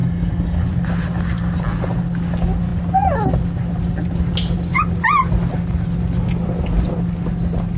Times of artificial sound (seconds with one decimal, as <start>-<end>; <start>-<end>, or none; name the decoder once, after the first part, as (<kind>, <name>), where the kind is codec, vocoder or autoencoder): 0.0-0.7 (codec, DAC)